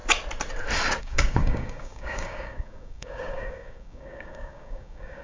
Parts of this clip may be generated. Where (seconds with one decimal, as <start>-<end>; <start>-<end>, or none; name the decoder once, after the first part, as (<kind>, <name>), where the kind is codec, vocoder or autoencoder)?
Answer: 1.0-5.2 (codec, DAC)